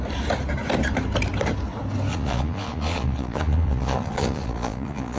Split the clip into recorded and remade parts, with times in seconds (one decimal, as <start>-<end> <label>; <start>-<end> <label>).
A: 0.0-2.1 recorded; 2.1-5.2 remade